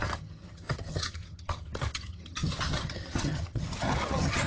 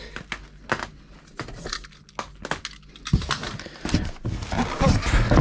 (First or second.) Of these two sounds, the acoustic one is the second